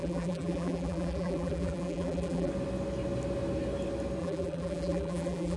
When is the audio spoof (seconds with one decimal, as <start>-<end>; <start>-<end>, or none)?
0.0-2.5; 4.2-5.6

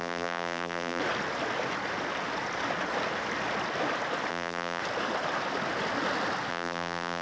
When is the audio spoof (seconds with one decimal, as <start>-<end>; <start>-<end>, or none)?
0.0-1.0; 4.3-4.8; 6.5-7.2

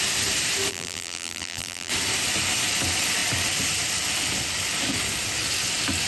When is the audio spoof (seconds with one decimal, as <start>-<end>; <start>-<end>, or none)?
0.7-1.9

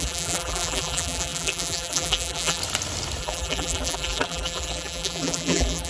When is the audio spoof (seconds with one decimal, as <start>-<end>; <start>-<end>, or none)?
0.0-2.6; 3.2-5.9

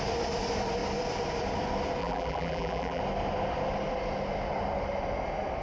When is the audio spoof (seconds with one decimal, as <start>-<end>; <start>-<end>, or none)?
2.0-3.0

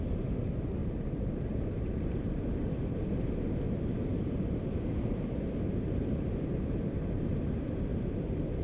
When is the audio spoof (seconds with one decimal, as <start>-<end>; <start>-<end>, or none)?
0.8-2.0; 4.1-7.3; 7.9-8.6